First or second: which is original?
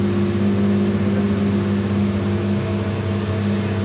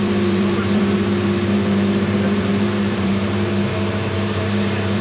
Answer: first